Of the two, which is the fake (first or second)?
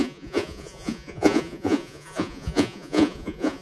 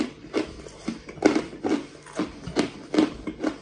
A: first